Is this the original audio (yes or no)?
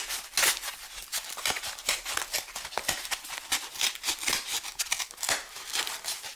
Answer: yes